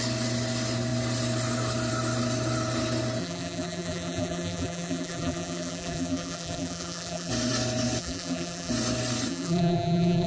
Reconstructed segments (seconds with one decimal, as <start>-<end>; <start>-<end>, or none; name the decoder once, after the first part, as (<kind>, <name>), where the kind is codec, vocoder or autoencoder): 3.2-7.3 (vocoder, BigVGAN v2); 8.0-8.7; 9.3-10.3